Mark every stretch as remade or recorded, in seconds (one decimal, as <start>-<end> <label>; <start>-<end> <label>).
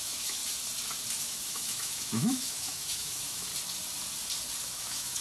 0.0-0.4 remade; 0.4-1.2 recorded; 1.2-3.5 remade; 3.5-4.6 recorded; 4.6-5.2 remade